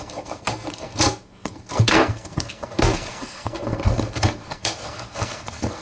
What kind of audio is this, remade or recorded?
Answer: remade